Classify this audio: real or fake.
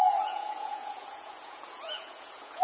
fake